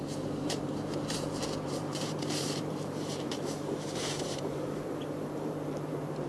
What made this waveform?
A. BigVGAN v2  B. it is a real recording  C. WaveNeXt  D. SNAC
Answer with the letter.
A